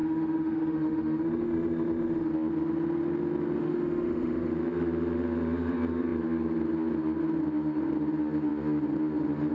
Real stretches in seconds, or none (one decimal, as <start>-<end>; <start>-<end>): 2.3-3.6; 4.5-9.5